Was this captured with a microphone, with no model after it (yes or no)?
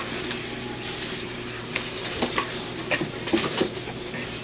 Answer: no